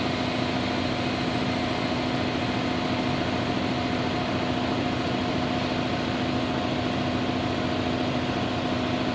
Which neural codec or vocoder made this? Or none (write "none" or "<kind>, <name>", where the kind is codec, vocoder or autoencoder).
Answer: none